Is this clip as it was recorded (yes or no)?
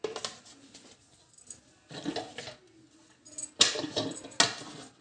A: yes